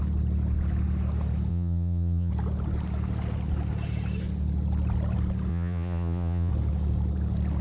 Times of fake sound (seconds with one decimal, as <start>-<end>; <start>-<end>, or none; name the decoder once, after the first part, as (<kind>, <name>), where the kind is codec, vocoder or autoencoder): 1.5-2.3 (vocoder, Vocos); 5.5-6.5